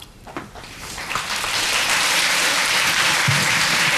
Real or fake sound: fake